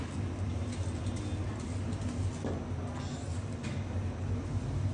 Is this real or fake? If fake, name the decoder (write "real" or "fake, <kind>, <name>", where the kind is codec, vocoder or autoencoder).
real